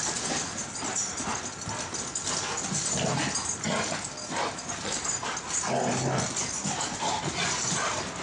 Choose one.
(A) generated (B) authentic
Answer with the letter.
B